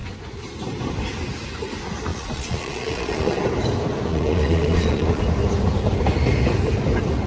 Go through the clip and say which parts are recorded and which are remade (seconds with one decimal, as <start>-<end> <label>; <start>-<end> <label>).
0.0-2.1 recorded; 2.1-3.4 remade; 3.4-4.1 recorded; 4.1-5.2 remade; 5.2-7.3 recorded